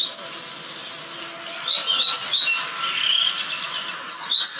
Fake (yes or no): no